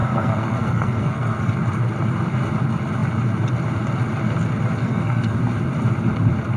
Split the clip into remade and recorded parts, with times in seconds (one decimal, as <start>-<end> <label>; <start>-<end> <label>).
0.0-1.5 remade; 1.5-4.8 recorded; 4.8-5.4 remade; 5.4-6.6 recorded